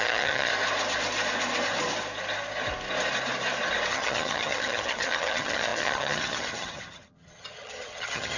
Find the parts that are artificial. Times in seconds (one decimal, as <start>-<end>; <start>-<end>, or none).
0.0-0.5; 3.9-8.4

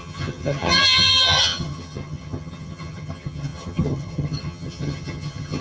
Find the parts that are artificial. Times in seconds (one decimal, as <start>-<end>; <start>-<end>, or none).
0.0-5.6

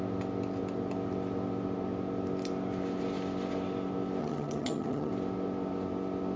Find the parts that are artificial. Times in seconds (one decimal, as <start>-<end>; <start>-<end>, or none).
4.2-5.1